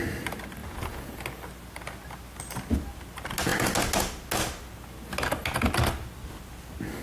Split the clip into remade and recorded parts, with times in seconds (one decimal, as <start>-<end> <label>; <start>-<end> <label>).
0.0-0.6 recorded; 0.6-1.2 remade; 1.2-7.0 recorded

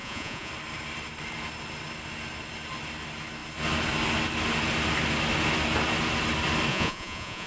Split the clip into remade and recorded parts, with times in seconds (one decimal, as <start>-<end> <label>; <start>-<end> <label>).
0.0-0.5 remade; 0.5-6.7 recorded; 6.7-7.5 remade

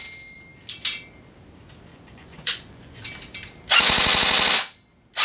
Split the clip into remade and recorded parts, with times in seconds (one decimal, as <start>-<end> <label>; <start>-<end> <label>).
0.0-1.9 recorded; 1.9-3.0 remade; 3.0-5.2 recorded

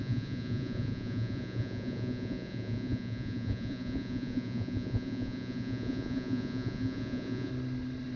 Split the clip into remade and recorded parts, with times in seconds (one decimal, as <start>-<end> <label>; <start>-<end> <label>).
0.0-7.5 remade; 7.5-8.2 recorded

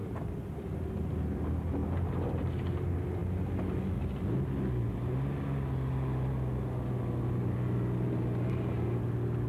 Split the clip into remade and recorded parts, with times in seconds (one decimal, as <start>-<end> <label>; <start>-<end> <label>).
0.0-9.5 recorded

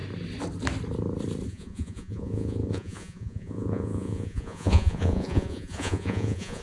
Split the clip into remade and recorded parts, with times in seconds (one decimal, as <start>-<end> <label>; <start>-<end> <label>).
0.0-1.5 recorded; 1.5-6.6 remade

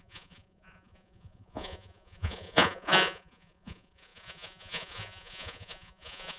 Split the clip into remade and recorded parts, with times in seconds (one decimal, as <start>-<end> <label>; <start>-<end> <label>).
0.0-6.4 remade

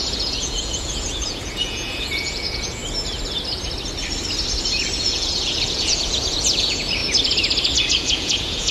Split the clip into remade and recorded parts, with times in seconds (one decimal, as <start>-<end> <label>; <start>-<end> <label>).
0.0-2.8 remade; 2.8-5.0 recorded; 5.0-7.0 remade; 7.0-7.8 recorded; 7.8-8.7 remade